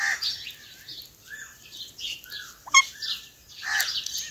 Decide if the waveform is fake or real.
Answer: real